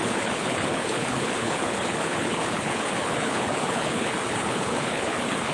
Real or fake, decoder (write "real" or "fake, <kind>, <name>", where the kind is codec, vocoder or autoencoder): fake, codec, HILCodec